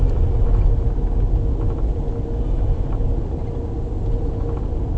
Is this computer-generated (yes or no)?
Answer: no